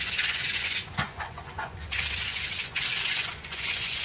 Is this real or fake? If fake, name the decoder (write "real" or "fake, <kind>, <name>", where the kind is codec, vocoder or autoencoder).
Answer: fake, vocoder, Vocos